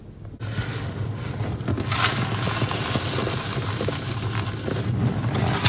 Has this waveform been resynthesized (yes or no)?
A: no